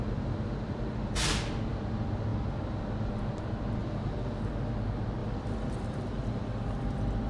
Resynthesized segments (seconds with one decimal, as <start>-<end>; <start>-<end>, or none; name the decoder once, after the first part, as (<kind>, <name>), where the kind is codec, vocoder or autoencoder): 3.8-4.4 (vocoder, BigVGAN v2); 5.2-6.6